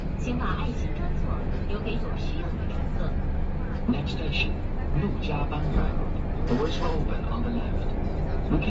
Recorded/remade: recorded